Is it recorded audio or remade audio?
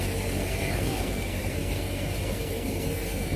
remade